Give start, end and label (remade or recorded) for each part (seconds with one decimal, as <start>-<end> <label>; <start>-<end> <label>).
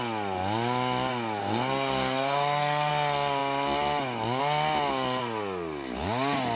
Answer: 0.0-1.4 recorded; 1.4-2.9 remade; 2.9-6.6 recorded